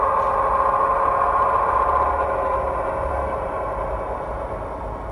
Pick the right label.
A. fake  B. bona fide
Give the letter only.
B